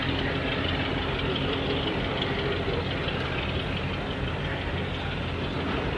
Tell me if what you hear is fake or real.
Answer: real